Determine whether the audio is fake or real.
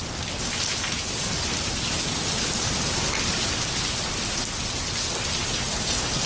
real